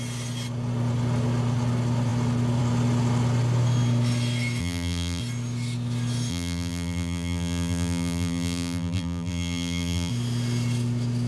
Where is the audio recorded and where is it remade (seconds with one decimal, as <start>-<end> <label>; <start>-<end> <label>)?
0.0-4.6 recorded; 4.6-5.2 remade; 5.2-6.3 recorded; 6.3-10.1 remade; 10.1-11.3 recorded